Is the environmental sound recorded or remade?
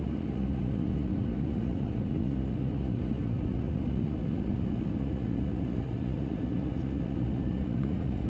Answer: remade